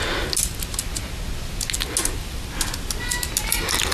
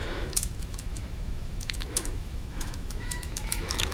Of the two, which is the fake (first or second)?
second